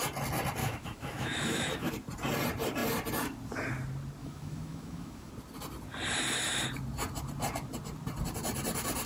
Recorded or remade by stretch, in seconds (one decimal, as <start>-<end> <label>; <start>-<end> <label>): 0.0-0.6 recorded; 0.6-1.9 remade; 1.9-4.2 recorded; 4.2-5.3 remade; 5.3-9.1 recorded